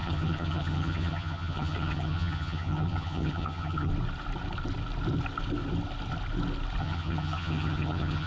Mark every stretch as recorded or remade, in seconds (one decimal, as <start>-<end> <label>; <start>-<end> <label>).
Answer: 0.0-3.9 remade; 3.9-6.8 recorded; 6.8-8.3 remade